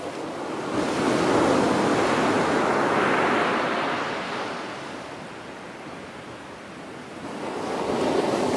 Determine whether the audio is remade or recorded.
recorded